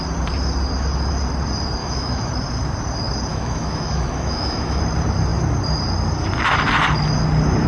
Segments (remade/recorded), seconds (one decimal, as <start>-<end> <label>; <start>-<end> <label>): 0.0-1.8 recorded; 1.8-2.3 remade; 2.3-3.3 recorded; 3.3-4.8 remade; 4.8-7.7 recorded